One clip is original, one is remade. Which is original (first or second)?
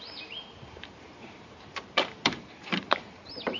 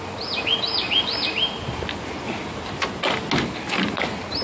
second